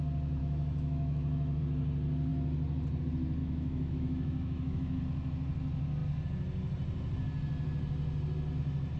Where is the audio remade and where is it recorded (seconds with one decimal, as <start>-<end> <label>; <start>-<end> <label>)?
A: 0.0-0.4 recorded; 0.4-1.6 remade; 1.6-3.4 recorded; 3.4-5.0 remade; 5.0-9.0 recorded